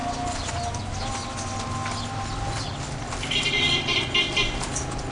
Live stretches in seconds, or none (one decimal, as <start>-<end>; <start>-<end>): 0.0-5.1